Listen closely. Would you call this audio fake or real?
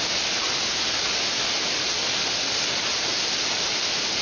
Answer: real